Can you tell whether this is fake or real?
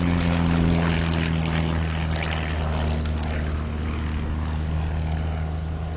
real